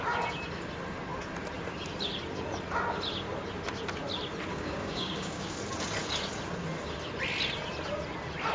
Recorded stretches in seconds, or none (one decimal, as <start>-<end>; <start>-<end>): 0.0-4.5; 5.5-8.5